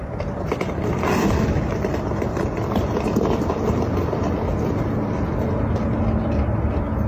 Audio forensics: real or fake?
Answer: real